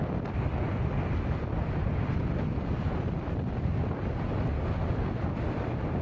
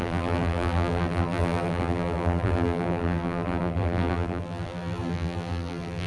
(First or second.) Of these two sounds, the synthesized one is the second